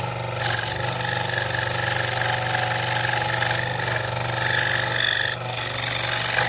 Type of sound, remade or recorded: recorded